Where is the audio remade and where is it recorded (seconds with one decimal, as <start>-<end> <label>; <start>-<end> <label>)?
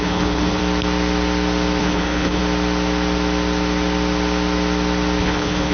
0.0-0.6 remade; 0.6-1.8 recorded; 1.8-2.4 remade; 2.4-5.2 recorded; 5.2-5.7 remade